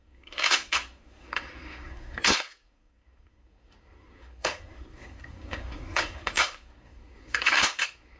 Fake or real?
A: fake